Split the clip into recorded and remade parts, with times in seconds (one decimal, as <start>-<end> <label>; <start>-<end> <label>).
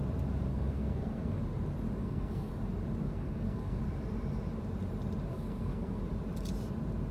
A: 0.0-0.5 recorded; 0.5-1.4 remade; 1.4-2.0 recorded; 2.0-2.5 remade; 2.5-3.0 recorded; 3.0-3.8 remade; 3.8-5.3 recorded; 5.3-6.0 remade; 6.0-7.1 recorded